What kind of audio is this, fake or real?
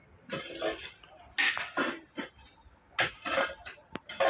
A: real